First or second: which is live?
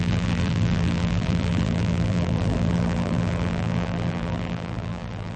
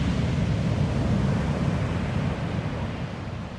second